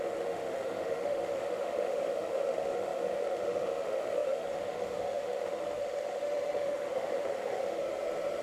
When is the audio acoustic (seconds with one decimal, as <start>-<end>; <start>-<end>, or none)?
7.8-8.4